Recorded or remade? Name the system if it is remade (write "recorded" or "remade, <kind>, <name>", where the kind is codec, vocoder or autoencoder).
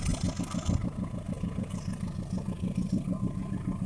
recorded